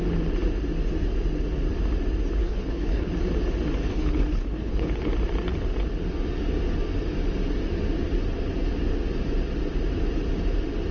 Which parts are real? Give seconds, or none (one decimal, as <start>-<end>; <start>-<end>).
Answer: 0.0-2.4; 3.1-3.8; 5.1-10.9